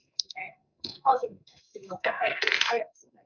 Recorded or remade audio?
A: remade